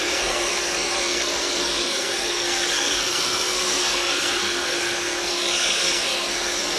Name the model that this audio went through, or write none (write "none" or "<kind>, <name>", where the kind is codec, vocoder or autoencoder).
codec, SNAC